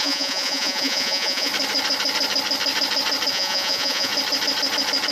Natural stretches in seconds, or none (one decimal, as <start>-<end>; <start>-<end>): 1.5-3.3; 4.1-5.1